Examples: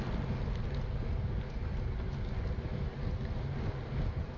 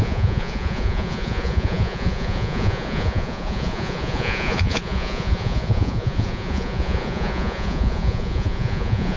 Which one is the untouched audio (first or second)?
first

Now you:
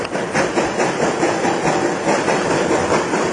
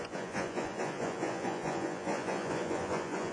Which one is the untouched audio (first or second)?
first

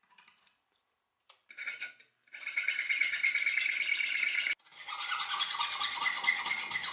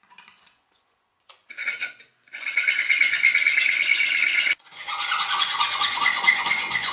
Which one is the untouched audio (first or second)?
first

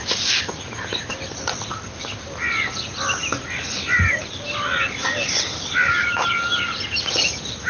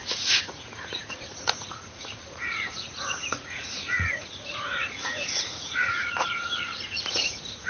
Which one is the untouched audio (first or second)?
first